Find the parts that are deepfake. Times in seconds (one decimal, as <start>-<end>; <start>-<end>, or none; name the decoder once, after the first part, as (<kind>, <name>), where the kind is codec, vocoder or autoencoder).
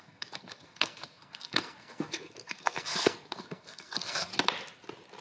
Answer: 0.0-4.3 (codec, SNAC)